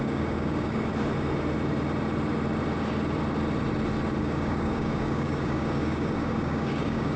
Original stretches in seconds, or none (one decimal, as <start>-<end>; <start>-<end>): 0.9-4.2